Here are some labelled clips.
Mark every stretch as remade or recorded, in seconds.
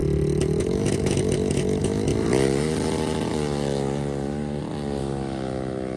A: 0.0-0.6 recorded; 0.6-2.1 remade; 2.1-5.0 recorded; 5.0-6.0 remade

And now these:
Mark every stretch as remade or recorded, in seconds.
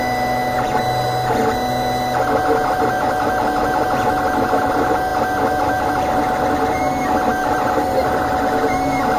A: 0.0-9.2 recorded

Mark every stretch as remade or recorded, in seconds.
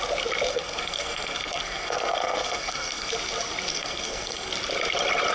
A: 0.0-0.5 recorded; 0.5-3.1 remade; 3.1-3.7 recorded; 3.7-4.5 remade; 4.5-5.3 recorded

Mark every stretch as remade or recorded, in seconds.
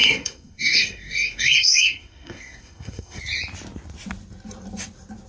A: 0.0-3.2 remade; 3.2-5.3 recorded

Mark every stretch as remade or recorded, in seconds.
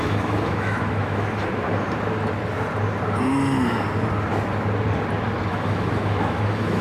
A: 0.0-1.5 remade; 1.5-5.5 recorded; 5.5-6.8 remade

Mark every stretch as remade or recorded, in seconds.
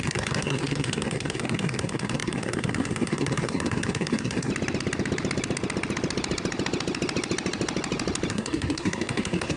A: 0.0-4.5 remade; 4.5-8.3 recorded; 8.3-9.6 remade